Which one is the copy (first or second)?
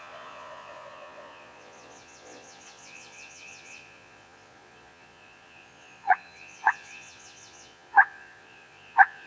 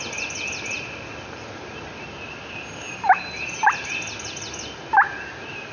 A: first